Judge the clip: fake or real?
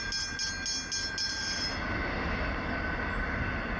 real